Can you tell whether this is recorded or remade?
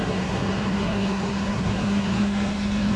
remade